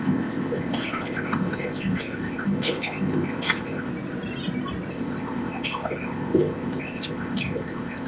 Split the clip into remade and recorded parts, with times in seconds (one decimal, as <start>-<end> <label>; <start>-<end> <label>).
0.0-3.9 remade; 3.9-4.9 recorded; 4.9-8.1 remade